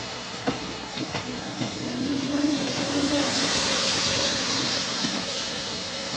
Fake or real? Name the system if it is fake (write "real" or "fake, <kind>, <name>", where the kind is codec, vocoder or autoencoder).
fake, codec, SNAC